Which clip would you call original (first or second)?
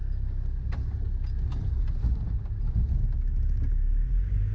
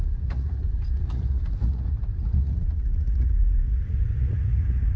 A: first